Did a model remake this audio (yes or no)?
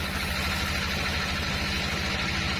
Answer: no